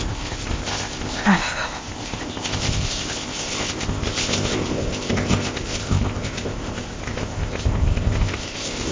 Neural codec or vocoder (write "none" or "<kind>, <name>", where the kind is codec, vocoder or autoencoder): codec, ZipCodec